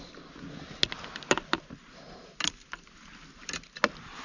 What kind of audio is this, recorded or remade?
recorded